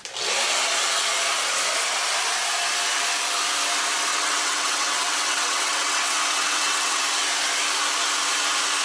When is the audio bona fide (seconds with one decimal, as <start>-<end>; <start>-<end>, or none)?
0.0-4.1; 7.0-8.8